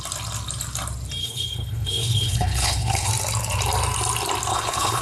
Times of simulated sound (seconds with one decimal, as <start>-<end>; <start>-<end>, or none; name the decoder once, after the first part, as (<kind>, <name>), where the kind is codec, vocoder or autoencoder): 1.2-3.1 (codec, HILCodec); 4.5-5.0